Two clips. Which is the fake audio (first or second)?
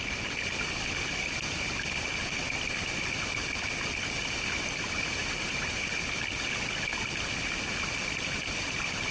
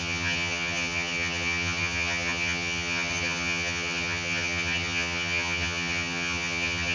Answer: second